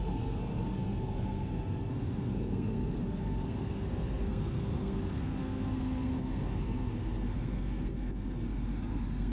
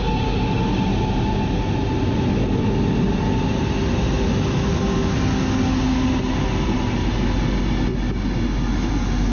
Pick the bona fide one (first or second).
second